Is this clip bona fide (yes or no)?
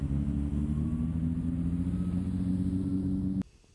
yes